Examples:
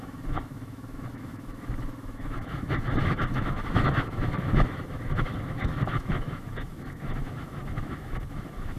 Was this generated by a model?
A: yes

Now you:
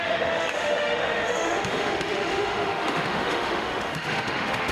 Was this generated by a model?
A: yes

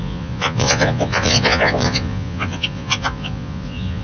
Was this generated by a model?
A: yes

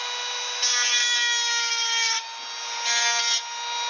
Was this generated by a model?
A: no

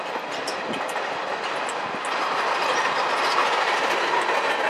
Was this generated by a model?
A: no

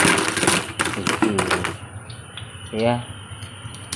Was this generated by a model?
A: no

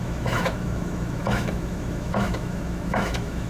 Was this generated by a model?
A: yes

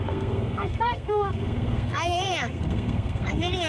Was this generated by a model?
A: yes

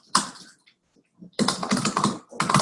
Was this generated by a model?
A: no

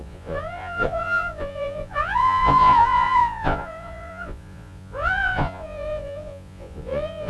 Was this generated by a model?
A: yes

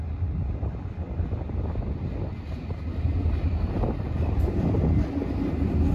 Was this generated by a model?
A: no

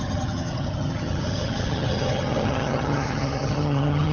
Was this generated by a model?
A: yes